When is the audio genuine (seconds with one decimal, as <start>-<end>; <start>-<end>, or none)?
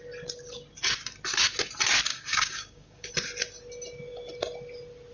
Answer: 0.0-2.1; 3.1-5.1